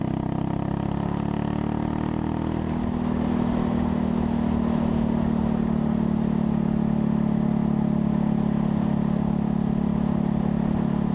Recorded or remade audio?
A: recorded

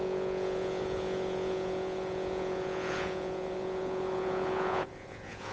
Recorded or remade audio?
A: remade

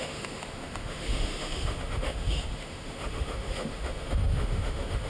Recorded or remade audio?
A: remade